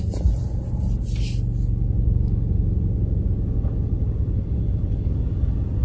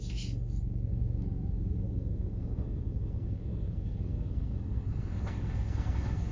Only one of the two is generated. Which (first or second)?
second